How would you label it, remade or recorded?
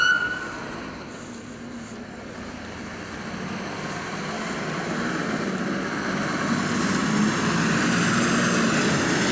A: recorded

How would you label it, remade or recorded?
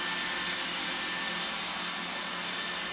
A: recorded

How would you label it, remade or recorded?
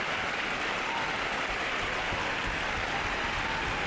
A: recorded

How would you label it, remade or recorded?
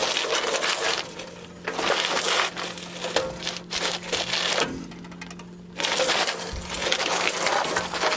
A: recorded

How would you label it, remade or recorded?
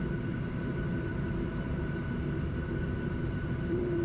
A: remade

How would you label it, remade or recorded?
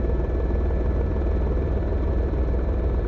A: remade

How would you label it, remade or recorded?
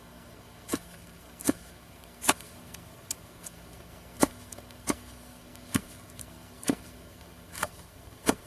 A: remade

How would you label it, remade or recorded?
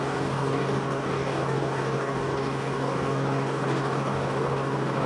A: remade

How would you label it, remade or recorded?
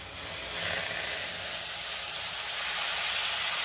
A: recorded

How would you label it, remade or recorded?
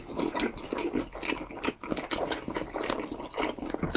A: recorded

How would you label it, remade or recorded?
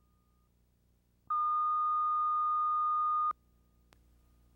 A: recorded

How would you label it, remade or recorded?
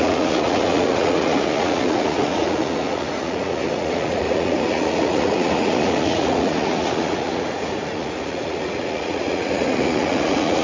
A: remade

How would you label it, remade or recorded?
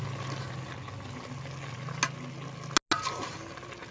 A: recorded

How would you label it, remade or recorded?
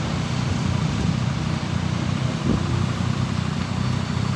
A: remade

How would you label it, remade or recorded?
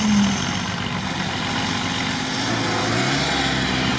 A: recorded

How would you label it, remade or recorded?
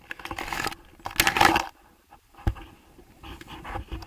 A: recorded